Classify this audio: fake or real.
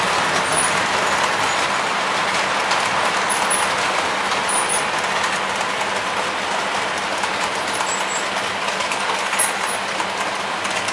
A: real